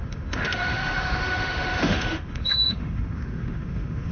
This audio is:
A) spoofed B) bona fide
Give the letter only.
A